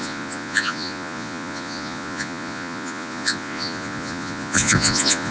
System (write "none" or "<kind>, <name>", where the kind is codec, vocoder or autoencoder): vocoder, Vocos